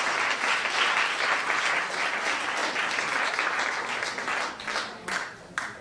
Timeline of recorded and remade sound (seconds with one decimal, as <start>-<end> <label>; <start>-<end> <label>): 0.0-5.8 recorded